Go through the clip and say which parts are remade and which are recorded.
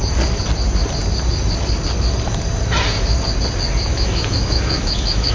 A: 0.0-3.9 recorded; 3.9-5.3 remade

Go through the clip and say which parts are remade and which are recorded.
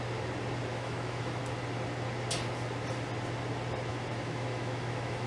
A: 0.0-0.7 recorded; 0.7-1.4 remade; 1.4-3.9 recorded; 3.9-5.3 remade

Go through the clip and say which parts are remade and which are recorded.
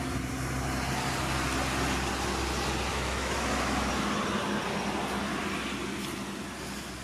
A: 0.0-2.9 recorded; 2.9-3.9 remade; 3.9-7.0 recorded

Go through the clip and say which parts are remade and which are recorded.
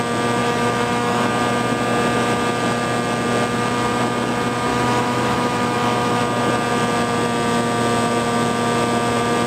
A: 0.0-0.4 recorded; 0.4-1.3 remade; 1.3-4.7 recorded; 4.7-6.2 remade; 6.2-9.5 recorded